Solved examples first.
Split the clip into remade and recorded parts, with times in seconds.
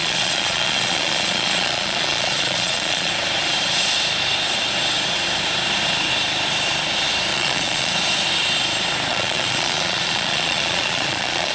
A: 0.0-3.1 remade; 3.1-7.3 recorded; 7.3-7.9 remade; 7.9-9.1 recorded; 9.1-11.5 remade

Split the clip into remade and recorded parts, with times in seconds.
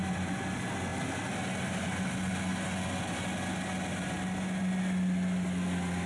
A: 0.0-6.1 recorded